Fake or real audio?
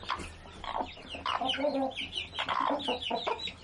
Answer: real